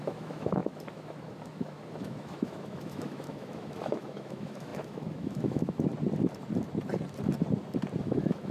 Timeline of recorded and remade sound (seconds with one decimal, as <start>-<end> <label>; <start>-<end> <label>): 0.0-5.9 remade; 5.9-8.0 recorded; 8.0-8.5 remade

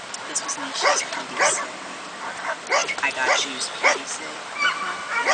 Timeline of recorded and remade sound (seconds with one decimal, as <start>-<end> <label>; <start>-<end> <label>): 0.0-5.3 recorded

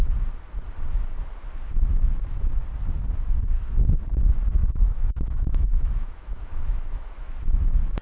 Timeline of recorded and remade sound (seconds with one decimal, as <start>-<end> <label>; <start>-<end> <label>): 0.0-4.6 recorded; 4.6-7.4 remade; 7.4-8.0 recorded

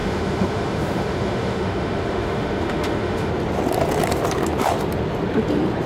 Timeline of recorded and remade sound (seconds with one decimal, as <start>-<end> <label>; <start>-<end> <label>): 0.0-3.3 remade; 3.3-5.9 recorded

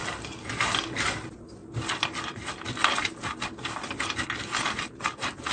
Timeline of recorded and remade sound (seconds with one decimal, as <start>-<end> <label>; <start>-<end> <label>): 0.0-5.5 recorded